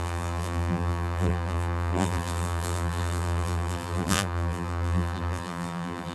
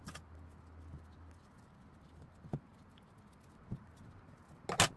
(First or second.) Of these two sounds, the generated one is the first